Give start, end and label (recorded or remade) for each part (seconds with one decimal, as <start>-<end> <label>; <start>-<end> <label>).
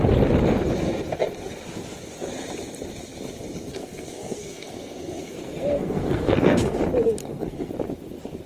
0.0-3.7 recorded; 3.7-6.8 remade; 6.8-7.2 recorded; 7.2-7.7 remade; 7.7-8.5 recorded